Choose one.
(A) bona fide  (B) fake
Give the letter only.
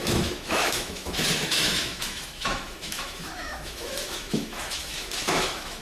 B